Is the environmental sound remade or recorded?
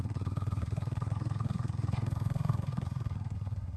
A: remade